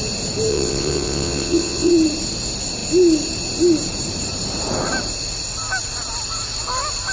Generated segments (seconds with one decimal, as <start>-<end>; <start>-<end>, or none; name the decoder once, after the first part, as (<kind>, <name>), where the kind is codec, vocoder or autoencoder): 0.5-1.9 (vocoder, WaveNeXt)